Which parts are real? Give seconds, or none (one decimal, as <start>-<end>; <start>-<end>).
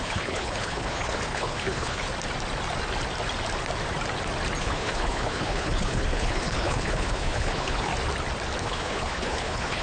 2.1-4.6; 7.9-8.6